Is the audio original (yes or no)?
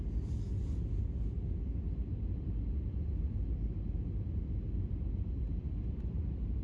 yes